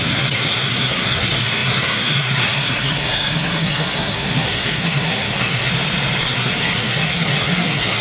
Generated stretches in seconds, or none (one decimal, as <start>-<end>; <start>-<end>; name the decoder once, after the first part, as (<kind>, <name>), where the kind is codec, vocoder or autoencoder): 0.0-5.7 (codec, SNAC); 6.2-8.0